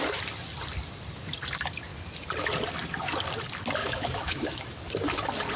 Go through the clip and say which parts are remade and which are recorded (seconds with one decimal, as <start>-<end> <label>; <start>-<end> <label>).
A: 0.0-3.8 recorded; 3.8-4.8 remade; 4.8-5.6 recorded